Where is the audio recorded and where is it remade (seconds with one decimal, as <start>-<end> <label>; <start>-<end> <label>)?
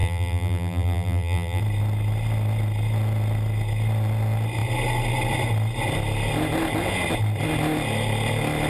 0.0-1.6 remade; 1.6-8.7 recorded